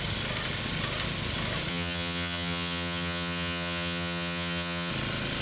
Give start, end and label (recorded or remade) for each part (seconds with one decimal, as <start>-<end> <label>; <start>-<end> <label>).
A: 0.0-1.7 recorded; 1.7-4.9 remade; 4.9-5.4 recorded